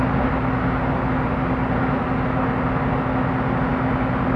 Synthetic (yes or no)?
no